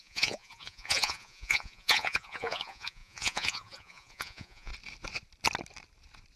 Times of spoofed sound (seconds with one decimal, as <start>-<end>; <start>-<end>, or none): 0.0-4.7